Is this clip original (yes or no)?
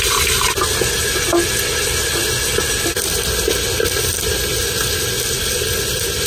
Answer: yes